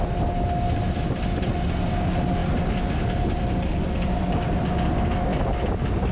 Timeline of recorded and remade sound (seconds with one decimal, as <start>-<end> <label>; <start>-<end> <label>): 0.0-6.1 recorded